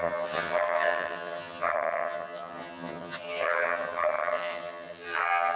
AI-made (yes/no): yes